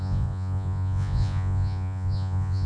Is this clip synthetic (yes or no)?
yes